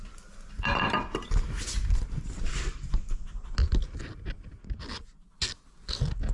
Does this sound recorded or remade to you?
recorded